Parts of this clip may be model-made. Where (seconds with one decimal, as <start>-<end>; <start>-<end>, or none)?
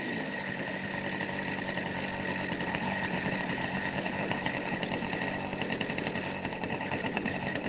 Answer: 0.0-0.9; 2.7-4.8; 6.5-7.7